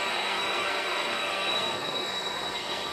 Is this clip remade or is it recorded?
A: remade